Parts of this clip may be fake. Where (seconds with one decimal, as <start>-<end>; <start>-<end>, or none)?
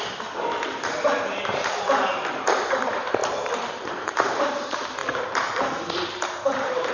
0.0-5.0; 5.6-6.9